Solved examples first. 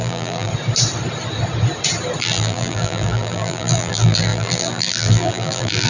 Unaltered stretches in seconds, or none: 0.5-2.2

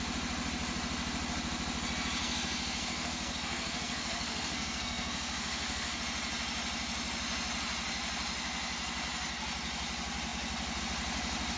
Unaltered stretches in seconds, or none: 0.0-2.2; 6.0-11.6

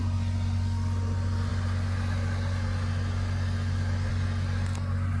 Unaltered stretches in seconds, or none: 0.0-5.2